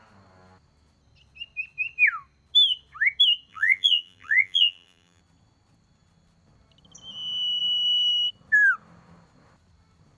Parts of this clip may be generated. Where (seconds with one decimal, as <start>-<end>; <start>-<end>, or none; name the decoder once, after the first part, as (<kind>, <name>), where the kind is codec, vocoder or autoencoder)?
3.5-5.2 (vocoder, BigVGAN v2)